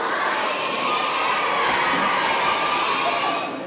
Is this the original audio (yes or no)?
yes